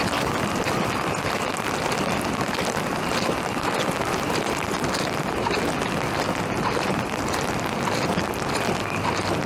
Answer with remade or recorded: remade